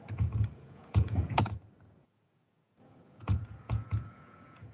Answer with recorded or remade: remade